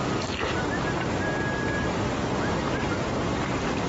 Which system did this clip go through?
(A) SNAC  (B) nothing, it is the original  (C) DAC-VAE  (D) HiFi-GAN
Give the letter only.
B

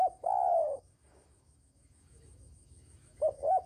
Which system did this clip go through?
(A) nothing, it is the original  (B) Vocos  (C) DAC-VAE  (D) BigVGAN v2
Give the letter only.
C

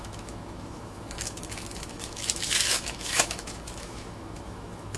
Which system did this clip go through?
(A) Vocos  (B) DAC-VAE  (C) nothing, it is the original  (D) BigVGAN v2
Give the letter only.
B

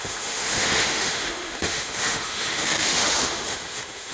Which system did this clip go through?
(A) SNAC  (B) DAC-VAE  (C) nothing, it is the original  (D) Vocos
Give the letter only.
B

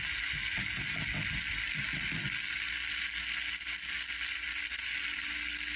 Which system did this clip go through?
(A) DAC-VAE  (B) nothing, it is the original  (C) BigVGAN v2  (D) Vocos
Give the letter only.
B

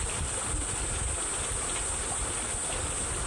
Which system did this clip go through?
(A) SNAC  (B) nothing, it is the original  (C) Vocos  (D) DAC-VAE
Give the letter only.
B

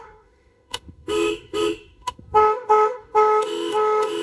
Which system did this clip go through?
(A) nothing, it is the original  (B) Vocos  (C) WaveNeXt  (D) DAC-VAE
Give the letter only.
D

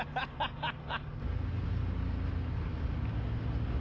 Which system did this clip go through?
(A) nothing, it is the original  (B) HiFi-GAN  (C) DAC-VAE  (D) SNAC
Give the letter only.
A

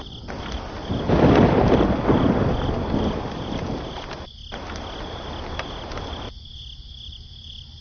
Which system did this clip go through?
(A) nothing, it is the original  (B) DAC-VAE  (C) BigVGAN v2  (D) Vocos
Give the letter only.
A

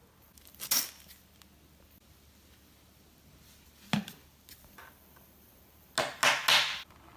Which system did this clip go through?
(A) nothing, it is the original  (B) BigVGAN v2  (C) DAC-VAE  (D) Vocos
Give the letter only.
A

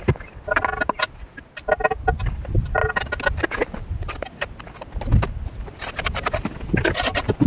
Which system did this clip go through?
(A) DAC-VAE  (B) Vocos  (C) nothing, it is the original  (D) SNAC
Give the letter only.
C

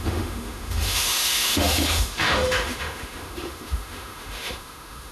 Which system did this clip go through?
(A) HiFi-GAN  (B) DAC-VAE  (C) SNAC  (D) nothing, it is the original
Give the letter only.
B